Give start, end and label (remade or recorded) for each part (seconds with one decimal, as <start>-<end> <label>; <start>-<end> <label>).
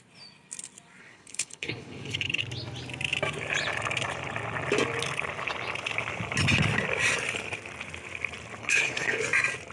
0.0-1.0 recorded; 1.0-2.4 remade; 2.4-8.6 recorded; 8.6-9.2 remade; 9.2-9.7 recorded